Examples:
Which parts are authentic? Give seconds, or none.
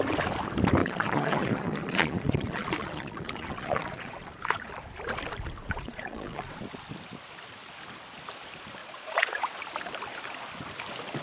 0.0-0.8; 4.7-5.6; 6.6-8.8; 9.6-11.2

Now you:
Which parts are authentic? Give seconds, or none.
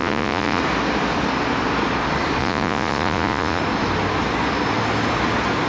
0.6-2.4; 3.6-5.7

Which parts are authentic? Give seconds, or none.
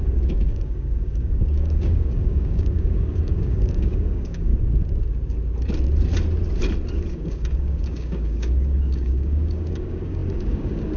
4.5-7.1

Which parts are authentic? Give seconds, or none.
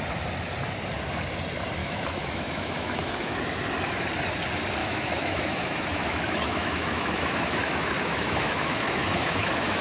0.0-1.8; 3.4-4.8